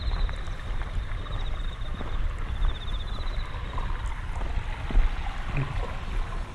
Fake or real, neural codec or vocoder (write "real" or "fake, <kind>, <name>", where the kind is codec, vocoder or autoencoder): real